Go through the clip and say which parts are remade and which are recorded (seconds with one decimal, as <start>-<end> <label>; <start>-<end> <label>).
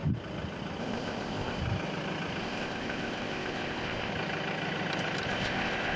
0.0-0.8 recorded; 0.8-1.6 remade; 1.6-2.4 recorded; 2.4-4.1 remade; 4.1-5.3 recorded; 5.3-6.0 remade